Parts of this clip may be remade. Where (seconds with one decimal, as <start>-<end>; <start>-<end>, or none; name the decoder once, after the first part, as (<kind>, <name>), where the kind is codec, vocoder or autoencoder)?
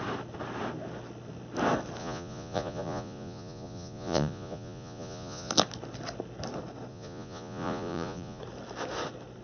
2.0-5.5 (vocoder, Vocos); 6.9-8.4